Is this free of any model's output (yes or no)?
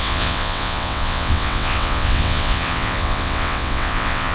no